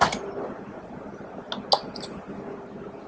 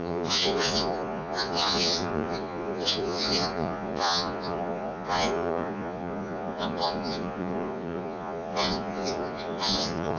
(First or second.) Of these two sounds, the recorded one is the first